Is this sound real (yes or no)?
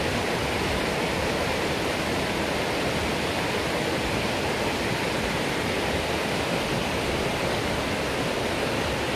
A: yes